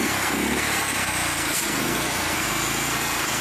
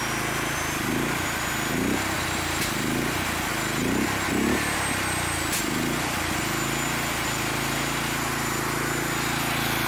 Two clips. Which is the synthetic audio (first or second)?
first